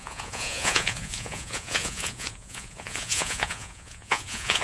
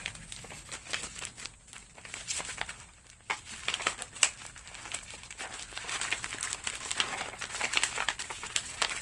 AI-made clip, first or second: first